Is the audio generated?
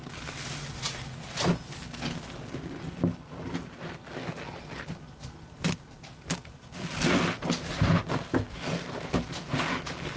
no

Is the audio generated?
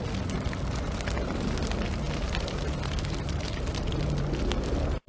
no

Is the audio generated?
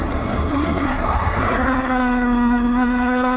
yes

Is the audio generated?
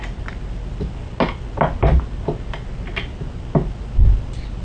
no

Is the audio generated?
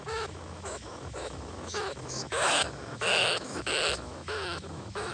yes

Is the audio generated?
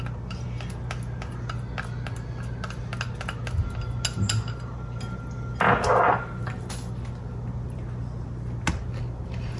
no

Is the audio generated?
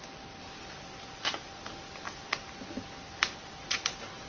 no